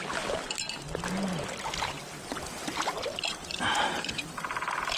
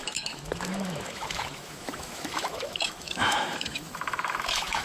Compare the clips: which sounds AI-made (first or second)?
second